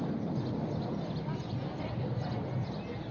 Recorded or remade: recorded